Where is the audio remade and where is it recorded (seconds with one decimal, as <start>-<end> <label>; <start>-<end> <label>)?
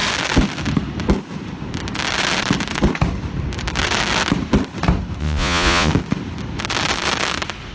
0.0-5.2 recorded; 5.2-5.9 remade; 5.9-7.7 recorded